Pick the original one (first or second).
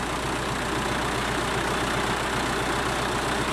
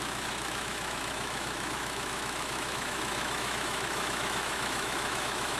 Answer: first